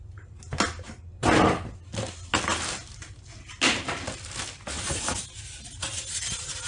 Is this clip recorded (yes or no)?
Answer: yes